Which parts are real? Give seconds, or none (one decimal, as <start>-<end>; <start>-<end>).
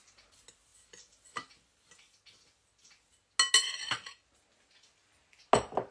0.0-5.9